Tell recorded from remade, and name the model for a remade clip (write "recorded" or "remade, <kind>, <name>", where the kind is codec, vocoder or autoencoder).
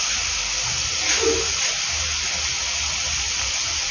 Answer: recorded